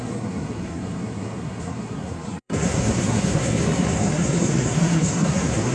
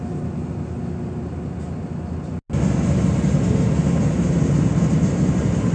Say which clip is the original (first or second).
second